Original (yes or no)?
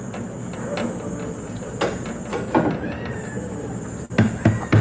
yes